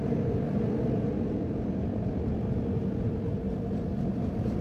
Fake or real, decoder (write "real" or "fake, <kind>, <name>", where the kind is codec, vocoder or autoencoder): real